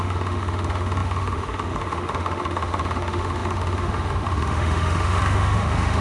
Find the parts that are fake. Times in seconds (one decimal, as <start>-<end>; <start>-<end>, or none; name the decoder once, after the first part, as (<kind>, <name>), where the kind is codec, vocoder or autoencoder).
0.0-6.0 (autoencoder, DAC-VAE)